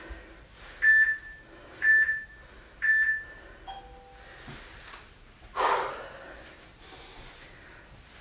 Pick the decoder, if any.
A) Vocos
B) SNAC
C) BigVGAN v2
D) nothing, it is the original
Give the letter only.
D